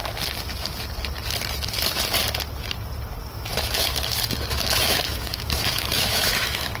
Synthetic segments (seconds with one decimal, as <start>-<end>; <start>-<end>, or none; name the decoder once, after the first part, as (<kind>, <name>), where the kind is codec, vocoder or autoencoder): 3.3-3.9 (autoencoder, DAC-VAE); 4.5-6.8